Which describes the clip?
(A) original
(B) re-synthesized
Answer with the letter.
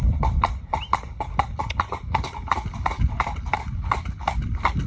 A